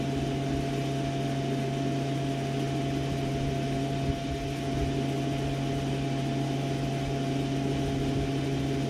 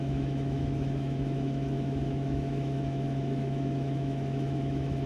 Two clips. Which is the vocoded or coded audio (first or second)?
second